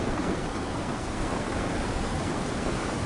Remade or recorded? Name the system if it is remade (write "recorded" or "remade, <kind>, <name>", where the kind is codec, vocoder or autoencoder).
remade, codec, SNAC